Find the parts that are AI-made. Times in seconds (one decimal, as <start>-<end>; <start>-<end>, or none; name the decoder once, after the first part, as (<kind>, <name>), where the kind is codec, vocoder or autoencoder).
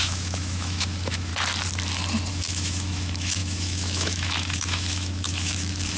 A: 0.0-1.3 (autoencoder, DAC-VAE); 2.3-6.0